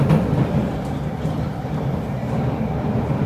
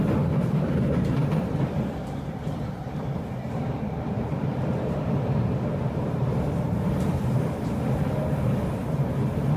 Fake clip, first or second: second